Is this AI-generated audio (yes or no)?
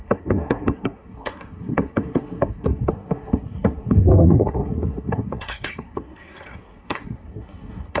yes